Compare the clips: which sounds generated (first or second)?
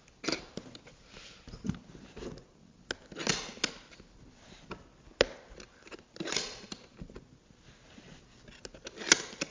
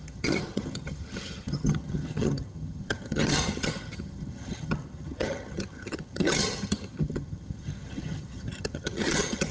second